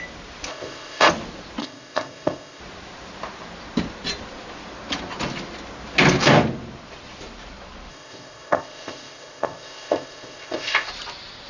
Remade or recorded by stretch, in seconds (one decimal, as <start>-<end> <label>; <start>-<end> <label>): 0.0-0.5 recorded; 0.5-1.1 remade; 1.1-1.6 recorded; 1.6-2.6 remade; 2.6-7.9 recorded; 7.9-10.9 remade; 10.9-11.5 recorded